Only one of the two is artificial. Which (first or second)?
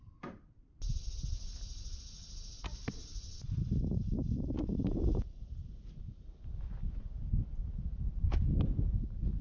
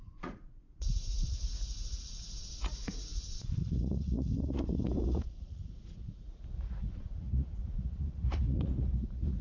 second